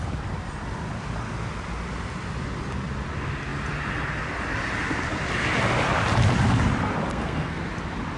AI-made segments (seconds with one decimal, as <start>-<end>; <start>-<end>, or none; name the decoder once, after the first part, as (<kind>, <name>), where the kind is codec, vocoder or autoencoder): 7.1-7.6 (codec, SNAC)